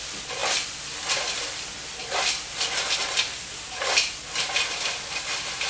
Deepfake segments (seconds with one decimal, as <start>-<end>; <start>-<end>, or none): none